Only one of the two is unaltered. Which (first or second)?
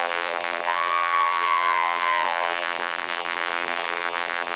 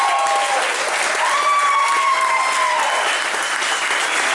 second